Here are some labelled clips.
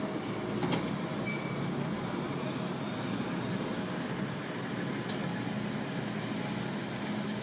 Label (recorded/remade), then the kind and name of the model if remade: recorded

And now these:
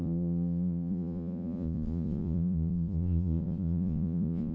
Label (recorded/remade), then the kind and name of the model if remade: remade, vocoder, Vocos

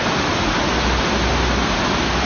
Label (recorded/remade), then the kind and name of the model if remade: recorded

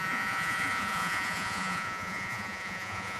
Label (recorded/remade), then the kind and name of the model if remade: remade, vocoder, Vocos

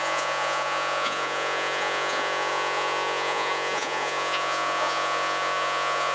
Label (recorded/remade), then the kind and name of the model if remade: remade, vocoder, Vocos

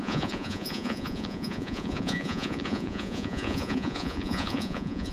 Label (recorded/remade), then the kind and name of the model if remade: remade, vocoder, Vocos